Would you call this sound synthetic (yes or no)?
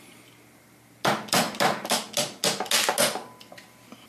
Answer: no